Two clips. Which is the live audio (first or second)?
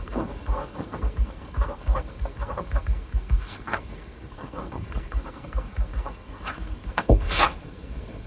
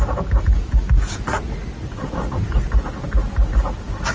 second